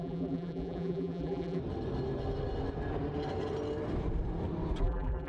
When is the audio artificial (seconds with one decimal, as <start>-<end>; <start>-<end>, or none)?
0.0-1.6; 4.8-5.3